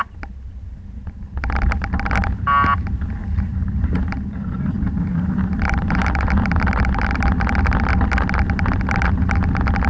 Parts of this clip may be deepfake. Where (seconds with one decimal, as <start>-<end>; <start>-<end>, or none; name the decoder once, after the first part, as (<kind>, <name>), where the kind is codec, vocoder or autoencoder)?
3.2-7.4 (vocoder, BigVGAN v2)